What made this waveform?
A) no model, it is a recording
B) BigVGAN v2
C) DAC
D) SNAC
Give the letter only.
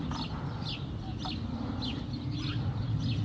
A